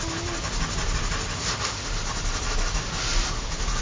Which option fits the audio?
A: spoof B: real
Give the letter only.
B